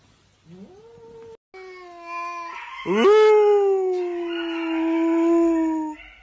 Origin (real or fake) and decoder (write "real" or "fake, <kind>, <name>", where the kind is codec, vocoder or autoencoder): real